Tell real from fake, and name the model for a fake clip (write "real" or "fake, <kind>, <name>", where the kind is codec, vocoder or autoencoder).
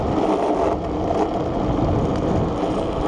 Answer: real